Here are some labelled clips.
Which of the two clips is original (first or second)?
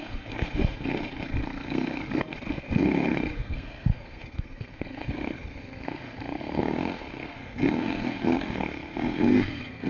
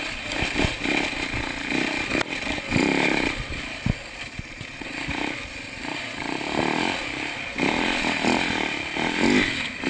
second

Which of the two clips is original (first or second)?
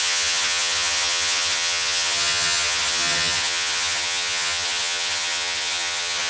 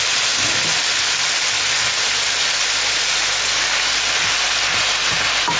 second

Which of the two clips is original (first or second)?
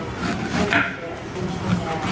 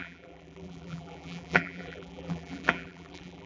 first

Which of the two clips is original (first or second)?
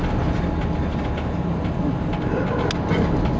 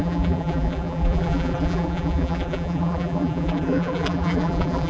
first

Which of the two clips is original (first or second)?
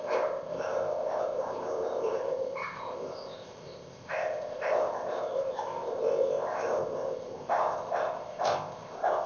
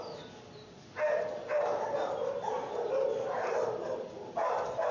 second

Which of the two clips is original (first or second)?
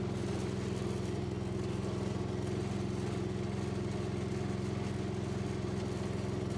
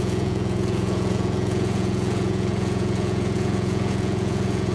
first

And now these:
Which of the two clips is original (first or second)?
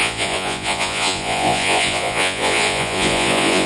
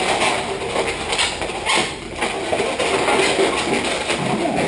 second